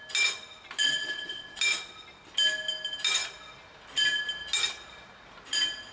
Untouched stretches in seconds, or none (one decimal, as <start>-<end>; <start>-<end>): 0.0-0.8; 1.6-5.9